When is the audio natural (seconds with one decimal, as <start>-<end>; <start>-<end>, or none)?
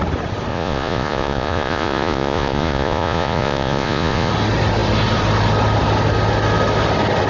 0.0-0.5; 4.3-7.3